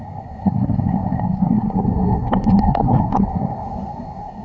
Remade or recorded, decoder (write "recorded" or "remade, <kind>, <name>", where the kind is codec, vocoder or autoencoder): remade, codec, SNAC